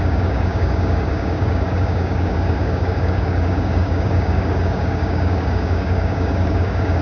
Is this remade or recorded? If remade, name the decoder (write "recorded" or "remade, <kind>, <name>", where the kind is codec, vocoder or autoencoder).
remade, codec, DAC